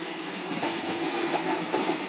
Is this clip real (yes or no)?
no